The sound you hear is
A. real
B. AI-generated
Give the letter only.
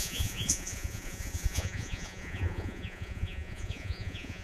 B